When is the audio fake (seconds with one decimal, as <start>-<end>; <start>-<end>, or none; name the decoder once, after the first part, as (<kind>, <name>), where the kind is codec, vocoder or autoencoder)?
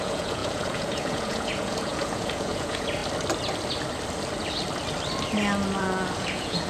0.0-3.0 (vocoder, Vocos); 5.8-6.7